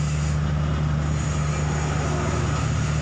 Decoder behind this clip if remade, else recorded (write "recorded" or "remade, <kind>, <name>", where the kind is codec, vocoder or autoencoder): recorded